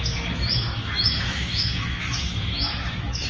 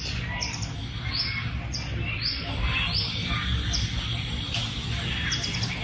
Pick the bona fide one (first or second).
second